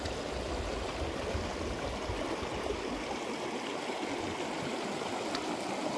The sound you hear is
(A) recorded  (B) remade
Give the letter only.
A